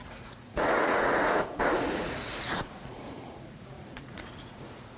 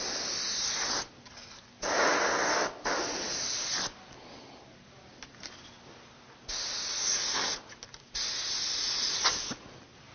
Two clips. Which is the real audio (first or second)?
second